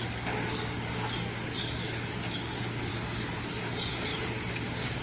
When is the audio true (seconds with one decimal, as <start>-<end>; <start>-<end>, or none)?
2.9-3.5; 4.1-5.0